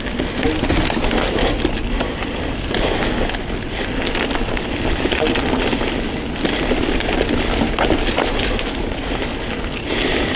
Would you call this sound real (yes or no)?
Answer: yes